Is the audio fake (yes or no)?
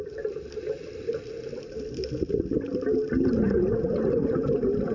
no